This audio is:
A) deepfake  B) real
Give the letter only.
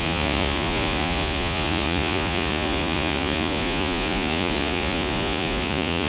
A